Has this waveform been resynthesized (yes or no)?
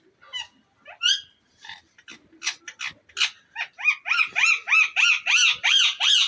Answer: no